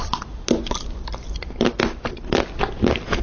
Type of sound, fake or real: real